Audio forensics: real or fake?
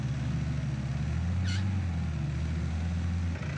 real